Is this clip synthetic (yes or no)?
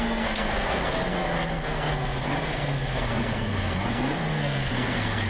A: yes